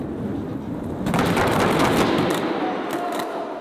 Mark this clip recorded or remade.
recorded